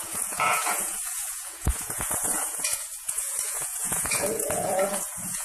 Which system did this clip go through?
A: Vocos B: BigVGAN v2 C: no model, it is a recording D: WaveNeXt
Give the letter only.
A